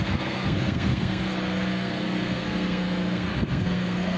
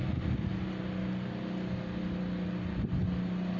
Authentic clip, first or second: second